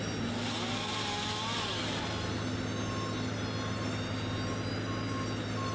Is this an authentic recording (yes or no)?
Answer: yes